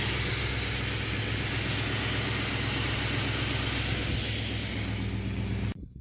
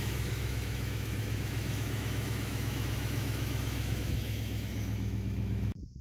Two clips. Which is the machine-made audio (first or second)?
second